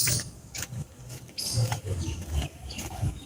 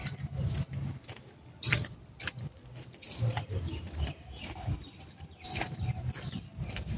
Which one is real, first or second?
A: second